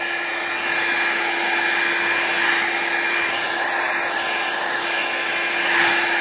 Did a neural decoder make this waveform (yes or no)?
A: no